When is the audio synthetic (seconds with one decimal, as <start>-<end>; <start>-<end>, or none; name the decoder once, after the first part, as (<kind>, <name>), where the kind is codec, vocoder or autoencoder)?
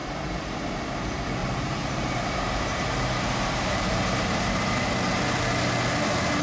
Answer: 1.4-4.7 (vocoder, BigVGAN v2)